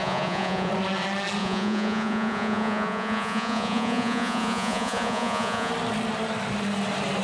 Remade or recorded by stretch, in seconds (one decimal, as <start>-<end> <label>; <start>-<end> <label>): 0.0-0.7 remade; 0.7-1.4 recorded; 1.4-5.7 remade; 5.7-7.2 recorded